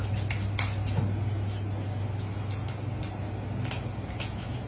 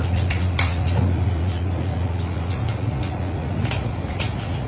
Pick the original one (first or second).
first